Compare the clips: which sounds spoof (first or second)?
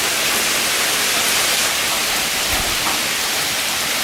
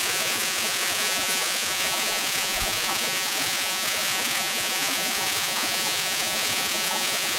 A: second